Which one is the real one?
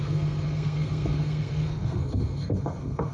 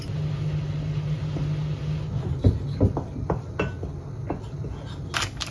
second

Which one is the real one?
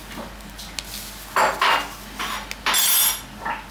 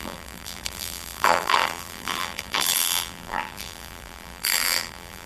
first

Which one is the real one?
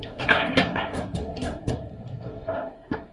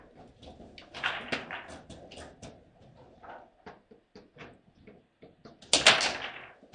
second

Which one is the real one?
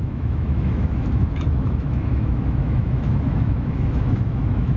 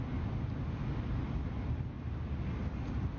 second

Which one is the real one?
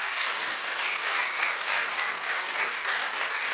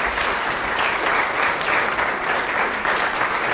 second